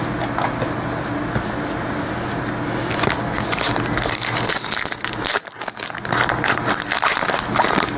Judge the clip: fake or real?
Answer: real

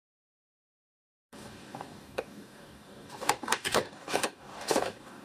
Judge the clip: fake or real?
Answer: fake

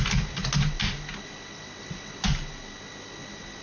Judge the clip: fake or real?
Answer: real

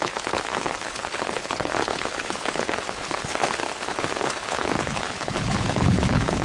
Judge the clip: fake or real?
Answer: fake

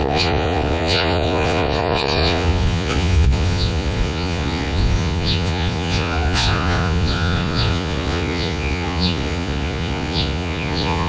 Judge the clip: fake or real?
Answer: fake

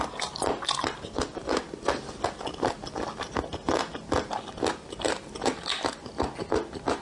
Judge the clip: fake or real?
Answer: real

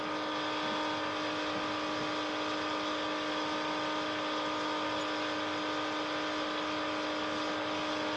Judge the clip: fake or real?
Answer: real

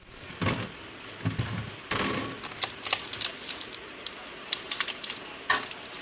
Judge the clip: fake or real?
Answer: real